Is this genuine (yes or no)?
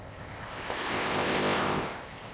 no